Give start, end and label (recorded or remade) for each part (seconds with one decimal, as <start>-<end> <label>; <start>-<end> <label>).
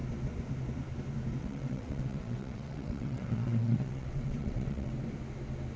0.0-1.4 recorded; 1.4-4.9 remade; 4.9-5.8 recorded